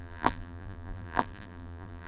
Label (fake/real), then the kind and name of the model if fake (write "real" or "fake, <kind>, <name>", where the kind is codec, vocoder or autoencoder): fake, vocoder, BigVGAN v2